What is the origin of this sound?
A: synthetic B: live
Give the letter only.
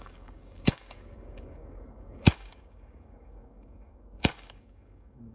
A